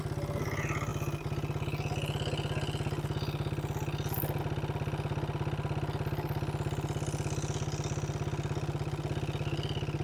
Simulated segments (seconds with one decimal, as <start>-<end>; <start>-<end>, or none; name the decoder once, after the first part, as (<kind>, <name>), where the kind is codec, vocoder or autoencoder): none